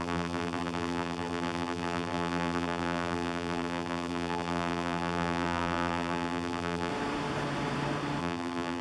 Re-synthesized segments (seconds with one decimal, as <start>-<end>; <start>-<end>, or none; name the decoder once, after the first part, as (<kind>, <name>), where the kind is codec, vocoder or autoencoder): 0.0-6.9 (vocoder, BigVGAN v2); 8.2-8.8